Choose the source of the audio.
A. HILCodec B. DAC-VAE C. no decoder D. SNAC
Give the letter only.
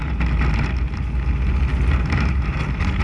C